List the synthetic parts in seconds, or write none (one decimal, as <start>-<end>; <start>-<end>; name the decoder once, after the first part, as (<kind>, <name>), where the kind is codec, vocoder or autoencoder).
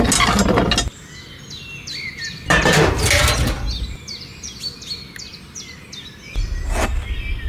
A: none